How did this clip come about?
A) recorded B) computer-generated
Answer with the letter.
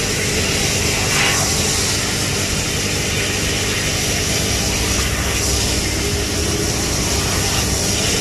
A